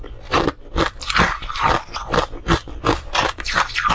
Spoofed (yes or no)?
yes